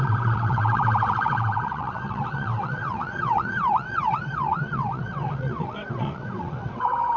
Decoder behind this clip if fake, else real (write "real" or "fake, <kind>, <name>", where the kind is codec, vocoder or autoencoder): fake, vocoder, WaveNeXt